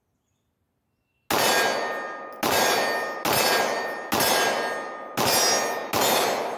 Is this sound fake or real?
real